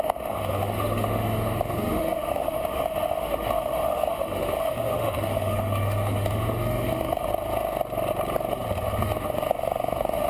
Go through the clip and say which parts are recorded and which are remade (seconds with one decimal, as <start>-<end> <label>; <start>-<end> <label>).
0.0-7.3 remade; 7.3-9.0 recorded; 9.0-10.3 remade